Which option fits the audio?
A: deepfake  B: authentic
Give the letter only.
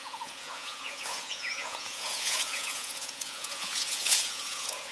A